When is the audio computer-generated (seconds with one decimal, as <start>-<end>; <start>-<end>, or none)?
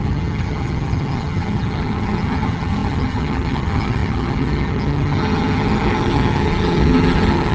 0.0-7.5